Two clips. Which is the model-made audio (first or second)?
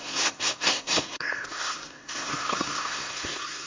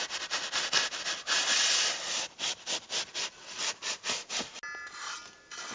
first